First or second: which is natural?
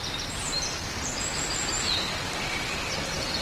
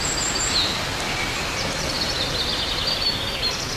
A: second